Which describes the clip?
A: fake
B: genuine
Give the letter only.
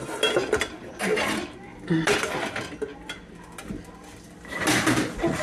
B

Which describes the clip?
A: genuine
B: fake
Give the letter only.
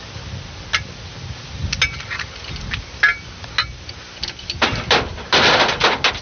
A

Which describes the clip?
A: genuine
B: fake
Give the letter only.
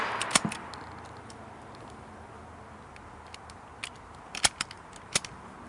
A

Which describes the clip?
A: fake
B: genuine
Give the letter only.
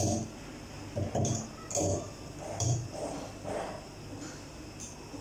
B